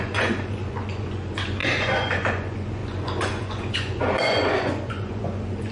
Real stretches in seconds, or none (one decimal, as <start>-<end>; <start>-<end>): none